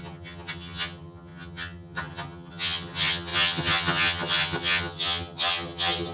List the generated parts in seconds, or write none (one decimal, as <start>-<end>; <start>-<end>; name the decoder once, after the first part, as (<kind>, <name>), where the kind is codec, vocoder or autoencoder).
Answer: 0.0-6.1 (vocoder, HiFi-GAN)